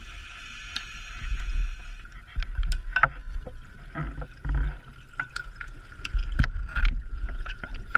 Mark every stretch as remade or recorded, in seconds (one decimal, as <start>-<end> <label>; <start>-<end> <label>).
0.0-1.1 recorded; 1.1-1.6 remade; 1.6-5.3 recorded; 5.3-6.2 remade; 6.2-7.0 recorded; 7.0-8.0 remade